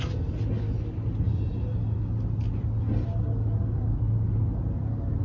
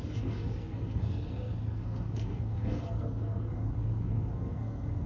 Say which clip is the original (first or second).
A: first